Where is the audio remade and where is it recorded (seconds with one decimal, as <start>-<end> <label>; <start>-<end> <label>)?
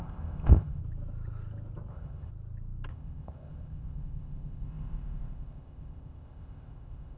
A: 0.0-0.8 remade; 0.8-1.9 recorded; 1.9-2.3 remade; 2.3-2.9 recorded; 2.9-7.2 remade